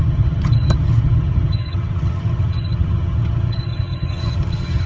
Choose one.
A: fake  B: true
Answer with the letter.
A